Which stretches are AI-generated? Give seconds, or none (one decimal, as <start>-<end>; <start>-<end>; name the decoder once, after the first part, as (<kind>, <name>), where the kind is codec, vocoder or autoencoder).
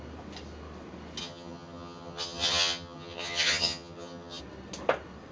1.2-4.4 (vocoder, HiFi-GAN)